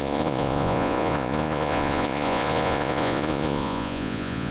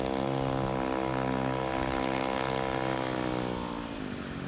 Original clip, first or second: second